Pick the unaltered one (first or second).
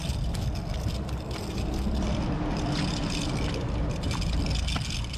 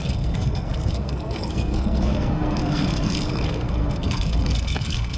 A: first